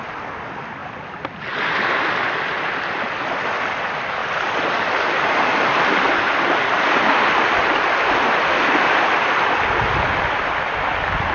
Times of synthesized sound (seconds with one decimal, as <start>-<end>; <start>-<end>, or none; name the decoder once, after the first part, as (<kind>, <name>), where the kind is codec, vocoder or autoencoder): 4.2-5.6 (vocoder, BigVGAN v2)